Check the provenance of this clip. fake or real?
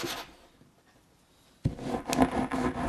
real